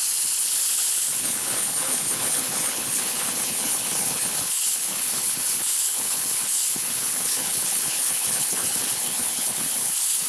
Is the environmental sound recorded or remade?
remade